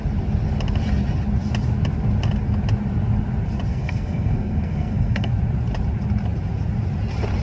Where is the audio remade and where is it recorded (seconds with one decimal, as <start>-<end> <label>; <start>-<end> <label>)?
0.0-3.7 recorded; 3.7-5.3 remade; 5.3-7.4 recorded